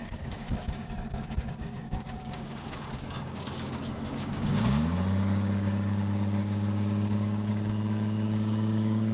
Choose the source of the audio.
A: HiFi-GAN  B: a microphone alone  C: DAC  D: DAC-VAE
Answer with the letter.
C